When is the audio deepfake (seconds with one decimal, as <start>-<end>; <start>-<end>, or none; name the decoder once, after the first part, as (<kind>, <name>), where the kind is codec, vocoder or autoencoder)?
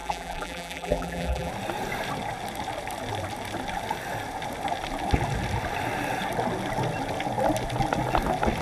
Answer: 0.0-1.5 (vocoder, BigVGAN v2)